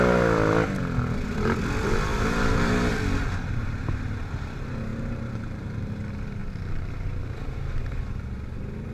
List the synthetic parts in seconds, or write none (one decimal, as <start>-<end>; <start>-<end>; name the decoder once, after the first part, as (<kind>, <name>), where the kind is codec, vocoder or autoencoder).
2.1-2.9 (vocoder, BigVGAN v2); 4.9-5.9; 6.4-6.9